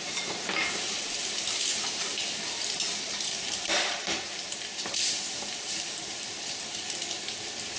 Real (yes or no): no